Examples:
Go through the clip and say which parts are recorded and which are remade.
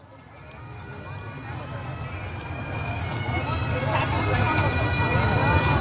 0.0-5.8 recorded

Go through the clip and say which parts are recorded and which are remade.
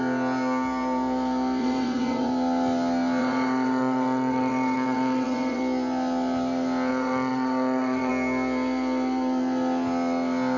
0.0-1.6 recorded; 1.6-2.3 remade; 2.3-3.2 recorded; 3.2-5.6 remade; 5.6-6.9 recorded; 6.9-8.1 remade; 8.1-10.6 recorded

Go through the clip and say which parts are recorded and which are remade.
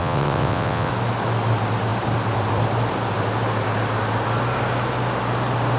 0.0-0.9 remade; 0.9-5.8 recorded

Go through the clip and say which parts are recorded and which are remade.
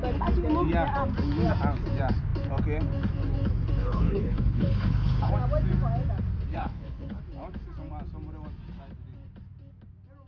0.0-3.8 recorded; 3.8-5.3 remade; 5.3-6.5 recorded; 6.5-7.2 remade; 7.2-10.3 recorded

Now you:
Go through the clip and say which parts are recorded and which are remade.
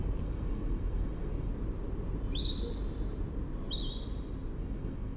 0.0-1.5 remade; 1.5-4.6 recorded; 4.6-5.2 remade